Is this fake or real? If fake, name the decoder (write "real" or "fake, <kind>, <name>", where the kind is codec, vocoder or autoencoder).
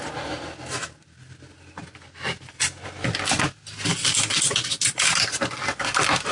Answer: real